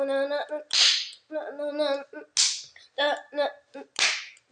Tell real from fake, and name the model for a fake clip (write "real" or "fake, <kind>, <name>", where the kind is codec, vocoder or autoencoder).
real